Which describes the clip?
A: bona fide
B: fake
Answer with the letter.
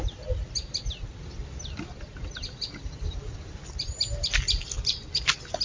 A